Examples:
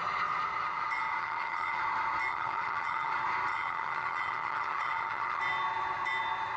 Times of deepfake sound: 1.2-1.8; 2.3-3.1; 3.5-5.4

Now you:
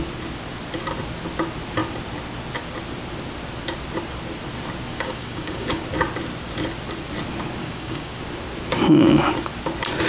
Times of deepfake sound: 4.9-5.8; 7.6-8.2

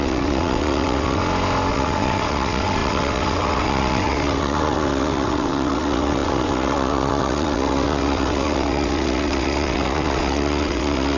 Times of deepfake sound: 0.0-1.2; 1.7-11.2

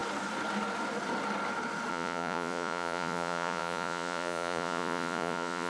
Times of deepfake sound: 1.9-5.7

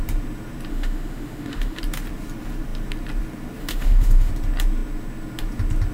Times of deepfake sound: 0.7-1.8; 3.6-4.3